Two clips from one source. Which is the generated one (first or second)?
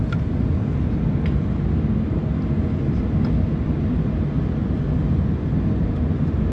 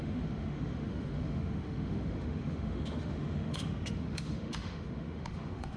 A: second